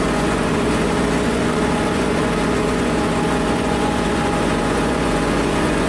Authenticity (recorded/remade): remade